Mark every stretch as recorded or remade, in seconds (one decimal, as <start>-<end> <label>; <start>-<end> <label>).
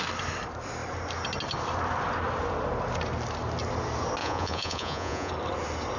0.0-4.2 recorded; 4.2-5.3 remade; 5.3-6.0 recorded